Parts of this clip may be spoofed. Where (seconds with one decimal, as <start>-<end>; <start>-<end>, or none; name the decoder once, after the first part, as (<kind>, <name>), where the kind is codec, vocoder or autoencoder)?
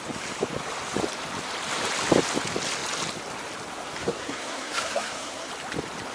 4.0-5.5 (codec, SNAC)